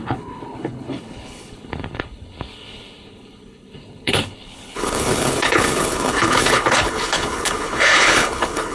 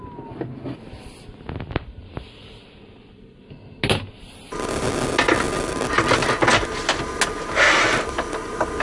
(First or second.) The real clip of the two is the second